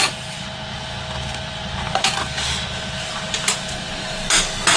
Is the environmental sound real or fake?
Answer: real